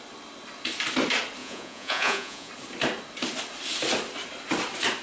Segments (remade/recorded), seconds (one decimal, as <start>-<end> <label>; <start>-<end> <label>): 0.0-1.4 recorded; 1.4-2.5 remade; 2.5-5.0 recorded